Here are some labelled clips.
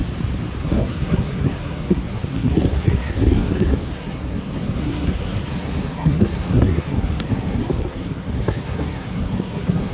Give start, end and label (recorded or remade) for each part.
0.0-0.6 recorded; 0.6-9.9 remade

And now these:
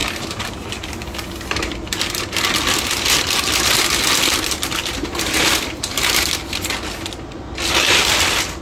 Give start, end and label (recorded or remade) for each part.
0.0-4.8 recorded; 4.8-5.5 remade; 5.5-8.6 recorded

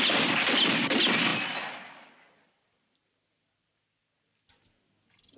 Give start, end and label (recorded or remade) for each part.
0.0-1.3 recorded; 1.3-4.5 remade; 4.5-5.4 recorded

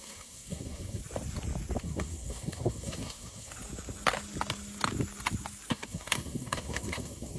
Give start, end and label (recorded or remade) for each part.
0.0-1.0 remade; 1.0-1.8 recorded; 1.8-3.5 remade; 3.5-5.7 recorded; 5.7-7.4 remade

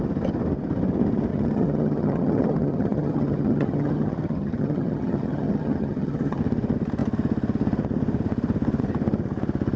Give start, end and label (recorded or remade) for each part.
0.0-1.3 recorded; 1.3-6.4 remade; 6.4-9.8 recorded

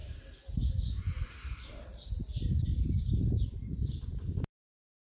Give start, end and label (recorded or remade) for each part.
0.0-5.1 remade

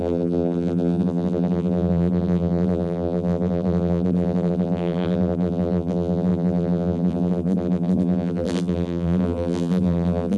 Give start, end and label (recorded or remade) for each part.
0.0-10.4 remade